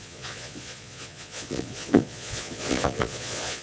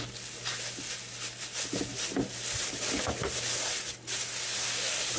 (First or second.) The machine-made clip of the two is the first